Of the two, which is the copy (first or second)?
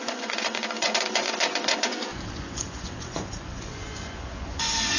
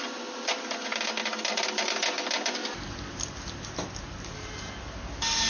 first